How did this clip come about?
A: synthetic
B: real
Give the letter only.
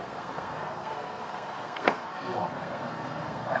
A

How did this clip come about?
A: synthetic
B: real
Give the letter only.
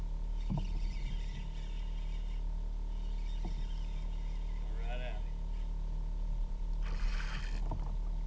B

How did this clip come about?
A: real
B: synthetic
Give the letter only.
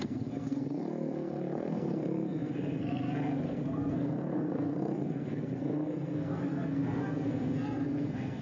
B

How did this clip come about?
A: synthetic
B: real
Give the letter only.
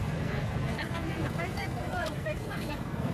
A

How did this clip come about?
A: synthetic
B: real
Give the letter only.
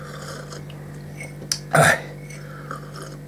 B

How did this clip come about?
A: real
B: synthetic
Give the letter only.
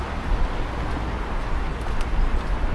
A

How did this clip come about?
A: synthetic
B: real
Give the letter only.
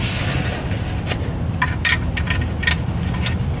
B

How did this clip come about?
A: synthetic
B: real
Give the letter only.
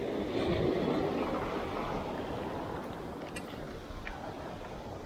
B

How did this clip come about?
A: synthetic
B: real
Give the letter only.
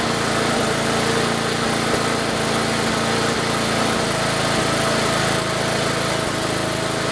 B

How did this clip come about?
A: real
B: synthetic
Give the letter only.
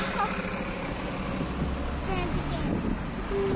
A